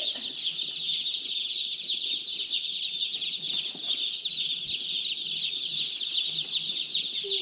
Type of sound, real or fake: real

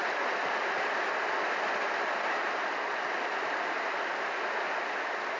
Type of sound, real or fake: real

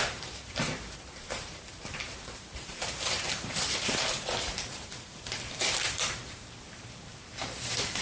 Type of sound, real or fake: fake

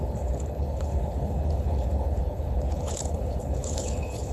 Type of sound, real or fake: fake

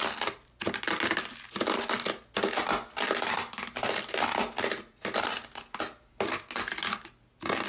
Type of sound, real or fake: real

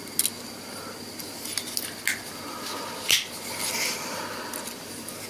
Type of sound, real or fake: real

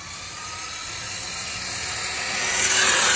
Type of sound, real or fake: real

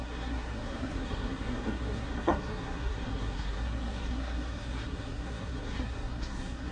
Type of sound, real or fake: fake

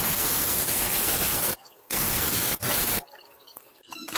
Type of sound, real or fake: fake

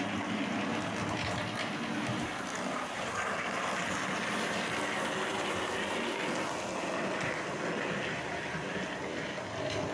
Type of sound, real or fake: real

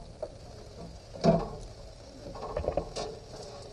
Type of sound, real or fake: real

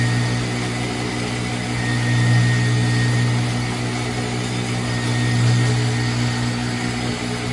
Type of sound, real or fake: real